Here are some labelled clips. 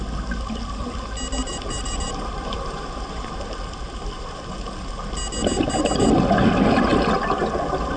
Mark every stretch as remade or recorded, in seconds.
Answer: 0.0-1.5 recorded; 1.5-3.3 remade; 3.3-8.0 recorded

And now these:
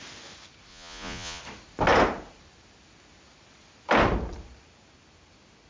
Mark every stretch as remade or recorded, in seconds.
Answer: 0.0-0.7 recorded; 0.7-1.4 remade; 1.4-5.7 recorded

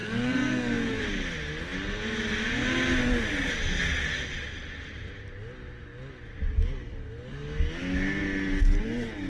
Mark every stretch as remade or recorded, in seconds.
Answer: 0.0-1.0 remade; 1.0-9.3 recorded